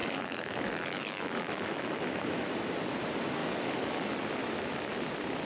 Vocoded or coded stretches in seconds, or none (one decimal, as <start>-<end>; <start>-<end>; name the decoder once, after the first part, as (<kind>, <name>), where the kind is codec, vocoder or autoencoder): 0.0-2.7 (autoencoder, DAC-VAE); 3.4-4.0; 4.4-4.9